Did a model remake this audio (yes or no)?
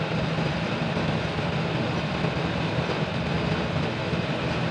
no